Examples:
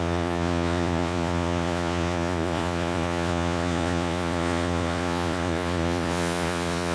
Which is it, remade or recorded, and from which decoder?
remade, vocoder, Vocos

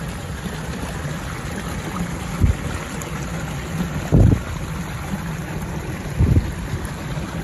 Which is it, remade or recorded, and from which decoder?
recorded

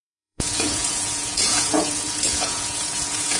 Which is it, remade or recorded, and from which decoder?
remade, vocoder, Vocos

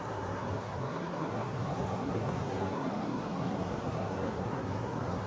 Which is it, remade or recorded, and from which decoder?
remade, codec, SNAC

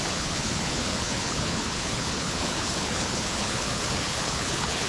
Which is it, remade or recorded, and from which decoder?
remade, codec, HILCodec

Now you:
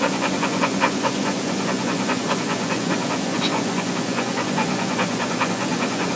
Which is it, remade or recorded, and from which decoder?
remade, vocoder, Vocos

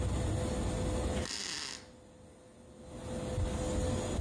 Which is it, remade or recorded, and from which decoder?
recorded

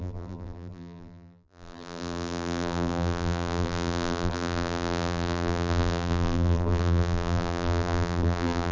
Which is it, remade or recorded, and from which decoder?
remade, vocoder, BigVGAN v2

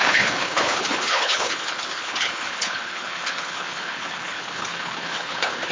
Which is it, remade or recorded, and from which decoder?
remade, codec, HILCodec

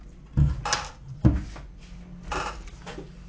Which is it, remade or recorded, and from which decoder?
recorded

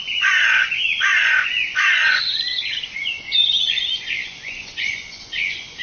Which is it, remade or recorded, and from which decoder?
remade, vocoder, Vocos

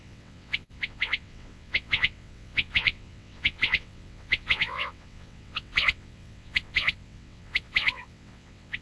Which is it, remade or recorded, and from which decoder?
remade, vocoder, WaveNeXt